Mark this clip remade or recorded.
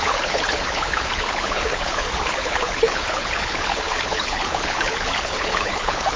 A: remade